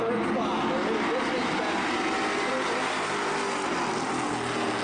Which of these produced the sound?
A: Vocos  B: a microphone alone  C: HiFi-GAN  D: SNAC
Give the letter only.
B